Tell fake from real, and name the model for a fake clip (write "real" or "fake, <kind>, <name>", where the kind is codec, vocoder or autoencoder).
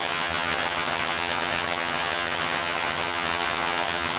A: fake, vocoder, HiFi-GAN